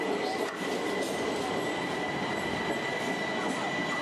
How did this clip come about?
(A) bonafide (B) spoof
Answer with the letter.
A